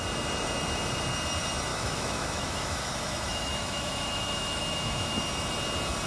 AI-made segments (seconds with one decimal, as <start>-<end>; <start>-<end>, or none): 1.7-5.2